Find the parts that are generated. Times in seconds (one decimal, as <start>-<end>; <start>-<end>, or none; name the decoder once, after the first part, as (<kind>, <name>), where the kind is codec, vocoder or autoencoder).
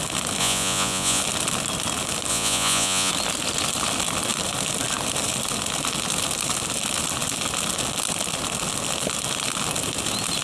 0.4-1.2 (vocoder, Vocos); 2.3-3.1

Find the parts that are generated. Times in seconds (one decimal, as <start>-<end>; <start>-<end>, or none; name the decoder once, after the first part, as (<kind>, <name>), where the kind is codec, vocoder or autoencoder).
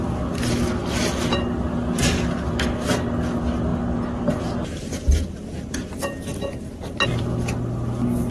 none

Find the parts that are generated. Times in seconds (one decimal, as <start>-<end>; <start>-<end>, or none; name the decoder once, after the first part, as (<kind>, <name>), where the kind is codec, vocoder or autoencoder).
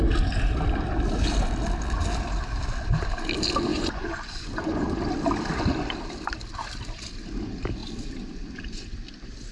3.7-5.0 (vocoder, Vocos)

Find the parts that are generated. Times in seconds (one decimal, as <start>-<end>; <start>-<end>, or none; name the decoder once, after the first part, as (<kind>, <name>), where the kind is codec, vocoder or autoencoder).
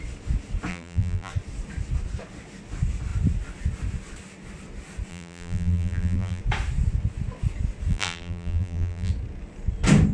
0.7-1.3 (vocoder, BigVGAN v2); 5.1-6.4; 7.9-9.1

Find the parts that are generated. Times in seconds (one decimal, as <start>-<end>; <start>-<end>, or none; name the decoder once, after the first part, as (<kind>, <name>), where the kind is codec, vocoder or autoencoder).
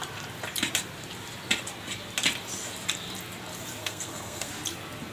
3.8-4.5 (codec, SNAC)